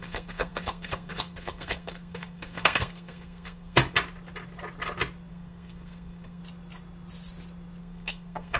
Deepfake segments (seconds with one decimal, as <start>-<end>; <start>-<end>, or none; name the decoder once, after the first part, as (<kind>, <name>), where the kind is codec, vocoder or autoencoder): 0.0-3.8 (codec, SNAC); 5.3-6.4; 7.8-8.6